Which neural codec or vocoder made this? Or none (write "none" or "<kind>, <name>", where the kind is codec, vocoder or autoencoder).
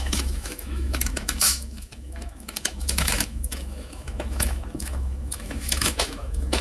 autoencoder, DAC-VAE